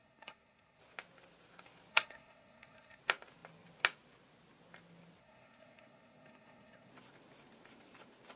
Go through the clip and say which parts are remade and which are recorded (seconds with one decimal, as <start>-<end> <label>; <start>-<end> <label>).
0.0-0.8 remade; 0.8-1.9 recorded; 1.9-3.0 remade; 3.0-5.2 recorded; 5.2-6.9 remade; 6.9-8.4 recorded